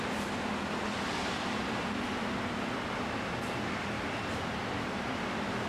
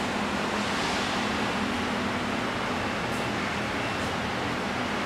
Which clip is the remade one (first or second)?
first